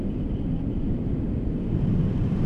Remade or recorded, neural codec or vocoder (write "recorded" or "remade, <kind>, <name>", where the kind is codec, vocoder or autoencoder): recorded